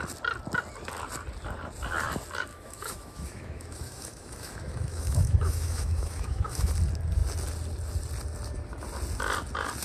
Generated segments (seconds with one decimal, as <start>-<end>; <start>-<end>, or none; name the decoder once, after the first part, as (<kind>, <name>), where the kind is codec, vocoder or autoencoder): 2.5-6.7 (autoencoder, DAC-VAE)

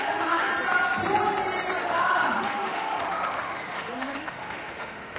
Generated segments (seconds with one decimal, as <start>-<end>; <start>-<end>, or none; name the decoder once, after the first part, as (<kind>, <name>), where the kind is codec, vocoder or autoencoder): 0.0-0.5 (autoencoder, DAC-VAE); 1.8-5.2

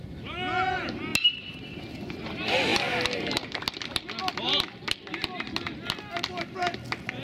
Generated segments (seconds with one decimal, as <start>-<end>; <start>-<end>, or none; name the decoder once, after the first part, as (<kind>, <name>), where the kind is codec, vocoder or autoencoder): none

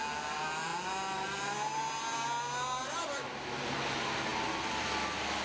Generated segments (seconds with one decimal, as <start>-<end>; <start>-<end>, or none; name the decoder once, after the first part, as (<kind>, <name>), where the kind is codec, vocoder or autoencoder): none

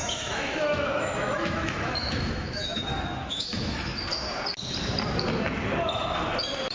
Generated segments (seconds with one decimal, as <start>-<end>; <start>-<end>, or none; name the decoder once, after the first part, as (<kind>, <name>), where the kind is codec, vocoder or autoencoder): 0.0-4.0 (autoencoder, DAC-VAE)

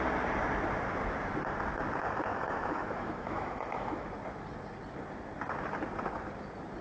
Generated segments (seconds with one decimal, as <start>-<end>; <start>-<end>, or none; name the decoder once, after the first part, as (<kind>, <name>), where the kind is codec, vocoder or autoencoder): 2.3-4.1 (autoencoder, DAC-VAE)

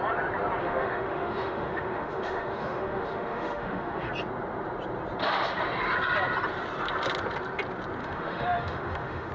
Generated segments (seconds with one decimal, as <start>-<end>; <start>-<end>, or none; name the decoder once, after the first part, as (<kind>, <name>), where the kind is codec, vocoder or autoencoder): 0.6-4.1 (autoencoder, DAC-VAE); 8.0-9.3